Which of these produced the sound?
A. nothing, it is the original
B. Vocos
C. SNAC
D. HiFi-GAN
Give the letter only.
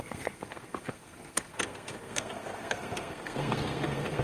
C